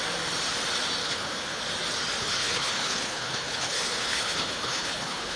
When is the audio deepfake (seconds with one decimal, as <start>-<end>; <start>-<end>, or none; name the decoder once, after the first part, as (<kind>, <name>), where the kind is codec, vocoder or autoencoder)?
1.0-1.6 (codec, HILCodec); 2.2-5.4